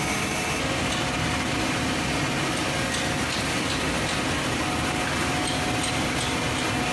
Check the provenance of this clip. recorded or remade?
recorded